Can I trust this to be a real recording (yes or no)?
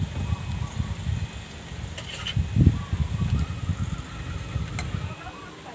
yes